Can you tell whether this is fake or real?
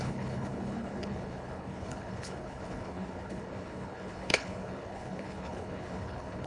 fake